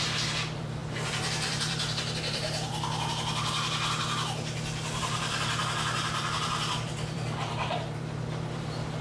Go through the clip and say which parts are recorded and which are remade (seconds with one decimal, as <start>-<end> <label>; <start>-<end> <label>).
0.0-2.7 remade; 2.7-5.0 recorded; 5.0-9.0 remade

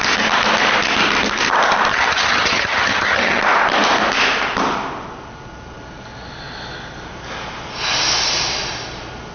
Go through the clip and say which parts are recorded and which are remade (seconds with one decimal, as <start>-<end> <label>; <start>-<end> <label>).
0.0-1.9 recorded; 1.9-3.4 remade; 3.4-9.3 recorded

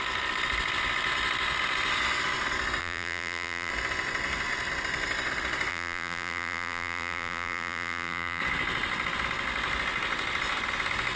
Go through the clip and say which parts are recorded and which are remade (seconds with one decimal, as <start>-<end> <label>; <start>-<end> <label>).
0.0-2.8 recorded; 2.8-3.7 remade; 3.7-5.7 recorded; 5.7-8.4 remade; 8.4-11.2 recorded

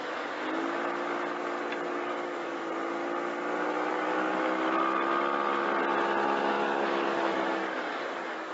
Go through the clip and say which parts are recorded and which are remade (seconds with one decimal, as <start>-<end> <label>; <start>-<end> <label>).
0.0-1.9 recorded; 1.9-2.6 remade; 2.6-3.9 recorded; 3.9-4.3 remade; 4.3-6.5 recorded; 6.5-8.5 remade

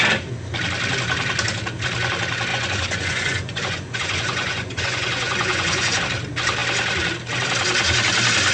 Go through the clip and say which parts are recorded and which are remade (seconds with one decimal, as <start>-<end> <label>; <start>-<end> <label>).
0.0-2.5 recorded; 2.5-6.0 remade; 6.0-8.5 recorded